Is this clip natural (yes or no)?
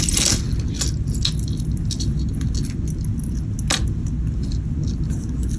yes